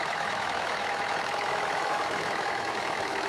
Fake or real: fake